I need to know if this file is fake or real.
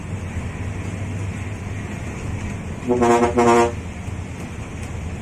real